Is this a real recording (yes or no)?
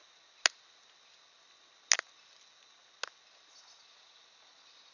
yes